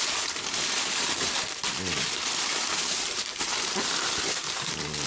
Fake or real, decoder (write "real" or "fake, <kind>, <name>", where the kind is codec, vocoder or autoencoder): fake, vocoder, BigVGAN v2